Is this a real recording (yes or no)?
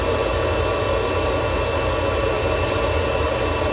yes